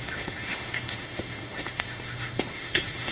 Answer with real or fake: fake